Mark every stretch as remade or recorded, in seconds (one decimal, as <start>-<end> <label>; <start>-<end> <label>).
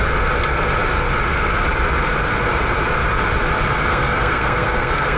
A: 0.0-3.9 recorded; 3.9-5.2 remade